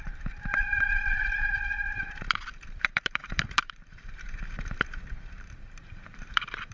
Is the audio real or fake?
fake